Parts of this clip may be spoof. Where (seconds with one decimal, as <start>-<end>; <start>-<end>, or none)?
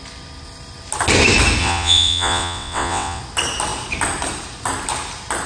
1.6-3.2